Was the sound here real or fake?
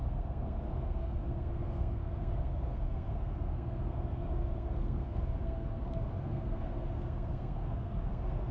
fake